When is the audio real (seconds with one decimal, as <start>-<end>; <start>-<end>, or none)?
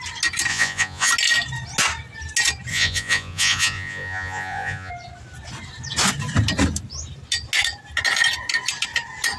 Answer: 0.0-0.5; 1.1-2.7; 4.9-9.4